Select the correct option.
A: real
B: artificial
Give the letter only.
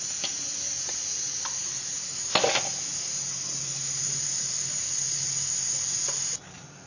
A